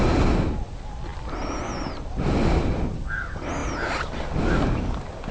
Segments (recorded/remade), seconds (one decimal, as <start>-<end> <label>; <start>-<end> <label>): 0.0-5.3 recorded

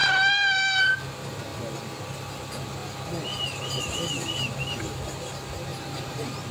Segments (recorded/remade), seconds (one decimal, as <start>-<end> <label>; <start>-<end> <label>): 0.0-5.7 recorded; 5.7-6.5 remade

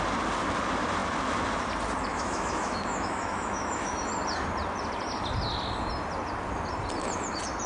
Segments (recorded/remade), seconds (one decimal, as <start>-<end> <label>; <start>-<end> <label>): 0.0-2.1 recorded; 2.1-4.1 remade; 4.1-7.7 recorded

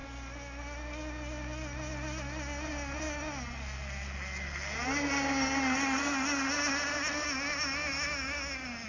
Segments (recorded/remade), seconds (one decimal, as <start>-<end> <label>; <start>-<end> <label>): 0.0-8.9 recorded

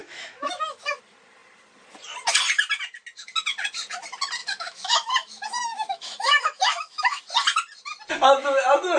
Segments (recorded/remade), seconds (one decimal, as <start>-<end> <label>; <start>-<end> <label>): 0.0-1.0 remade; 1.0-4.4 recorded; 4.4-7.2 remade; 7.2-9.0 recorded

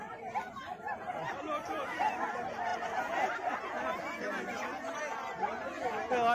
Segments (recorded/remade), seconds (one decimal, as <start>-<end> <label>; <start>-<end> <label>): 0.0-6.3 recorded

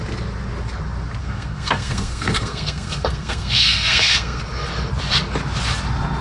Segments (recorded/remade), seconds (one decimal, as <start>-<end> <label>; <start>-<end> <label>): 0.0-1.2 recorded; 1.2-4.4 remade; 4.4-6.2 recorded

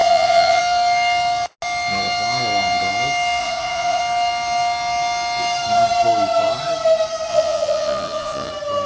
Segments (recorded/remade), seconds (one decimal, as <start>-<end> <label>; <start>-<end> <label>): 0.0-0.6 remade; 0.6-3.4 recorded; 3.4-4.0 remade; 4.0-7.3 recorded; 7.3-8.5 remade; 8.5-8.9 recorded